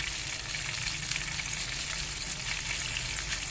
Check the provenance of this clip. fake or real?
real